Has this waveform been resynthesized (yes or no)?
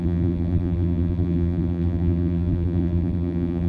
yes